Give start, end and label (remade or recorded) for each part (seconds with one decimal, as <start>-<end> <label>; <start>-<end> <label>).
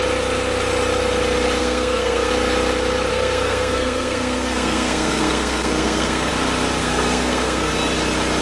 0.0-1.6 recorded; 1.6-2.3 remade; 2.3-3.1 recorded; 3.1-6.3 remade; 6.3-6.8 recorded; 6.8-7.7 remade; 7.7-8.4 recorded